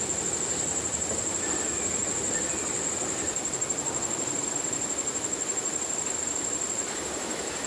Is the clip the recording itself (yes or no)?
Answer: yes